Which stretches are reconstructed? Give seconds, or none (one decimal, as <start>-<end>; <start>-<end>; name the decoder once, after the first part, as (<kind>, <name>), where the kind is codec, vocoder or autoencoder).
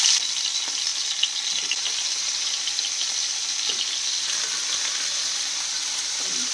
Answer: none